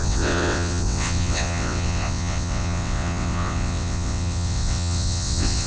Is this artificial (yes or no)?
yes